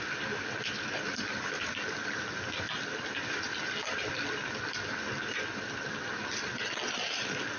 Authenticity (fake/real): real